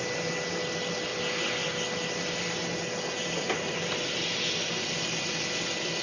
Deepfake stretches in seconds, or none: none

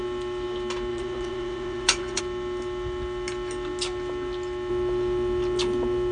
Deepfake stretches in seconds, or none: 0.9-2.2 (vocoder, Vocos)

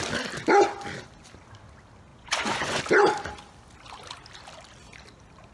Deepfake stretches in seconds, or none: 2.1-2.8 (vocoder, Vocos)

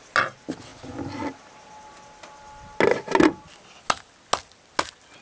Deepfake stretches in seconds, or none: none

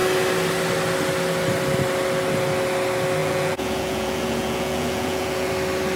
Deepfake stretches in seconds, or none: 3.2-5.5 (vocoder, Vocos)

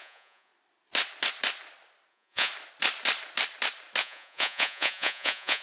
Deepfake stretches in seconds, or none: 0.0-0.5 (vocoder, Vocos); 2.1-2.5; 4.0-5.6

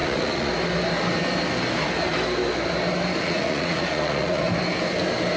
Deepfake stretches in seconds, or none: 0.0-0.5 (vocoder, Vocos); 3.2-4.4